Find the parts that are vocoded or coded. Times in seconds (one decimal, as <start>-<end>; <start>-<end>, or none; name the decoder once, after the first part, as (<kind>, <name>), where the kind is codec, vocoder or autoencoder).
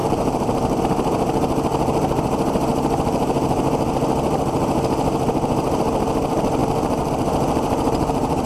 0.0-0.8 (vocoder, BigVGAN v2); 6.6-7.1